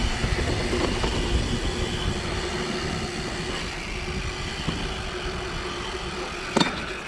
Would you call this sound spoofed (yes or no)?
no